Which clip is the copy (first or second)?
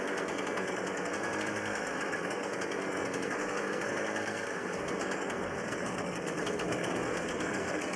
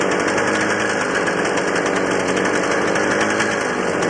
first